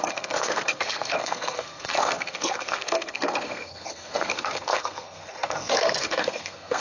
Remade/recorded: remade